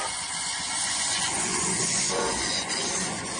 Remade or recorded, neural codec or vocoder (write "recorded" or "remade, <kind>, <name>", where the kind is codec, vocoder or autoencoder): remade, vocoder, Vocos